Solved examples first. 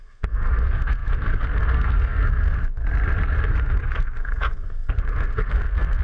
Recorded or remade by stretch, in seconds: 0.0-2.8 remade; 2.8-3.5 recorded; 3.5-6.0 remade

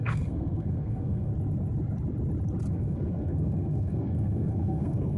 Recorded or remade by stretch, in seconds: 0.0-1.3 remade; 1.3-2.7 recorded; 2.7-5.2 remade